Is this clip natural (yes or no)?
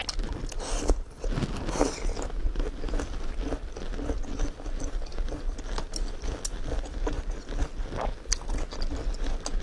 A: yes